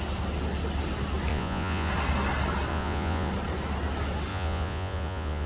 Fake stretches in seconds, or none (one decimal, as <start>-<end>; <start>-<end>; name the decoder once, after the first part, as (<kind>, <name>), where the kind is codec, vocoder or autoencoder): 1.3-1.9 (vocoder, Vocos); 2.7-3.3; 4.3-5.5